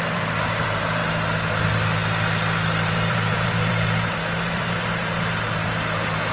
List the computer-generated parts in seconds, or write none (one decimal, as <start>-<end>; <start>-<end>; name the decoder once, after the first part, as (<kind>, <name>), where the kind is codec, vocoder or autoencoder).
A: 0.0-1.0 (vocoder, BigVGAN v2); 2.8-6.3

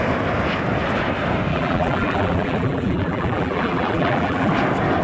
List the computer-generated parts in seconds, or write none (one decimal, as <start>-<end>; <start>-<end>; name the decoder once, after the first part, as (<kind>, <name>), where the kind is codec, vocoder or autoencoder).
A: 1.5-4.5 (vocoder, BigVGAN v2)

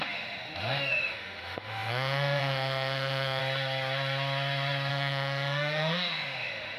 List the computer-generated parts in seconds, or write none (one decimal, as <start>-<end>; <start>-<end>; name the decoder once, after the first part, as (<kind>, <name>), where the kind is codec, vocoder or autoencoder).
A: 0.0-3.4 (autoencoder, DAC-VAE); 4.9-6.8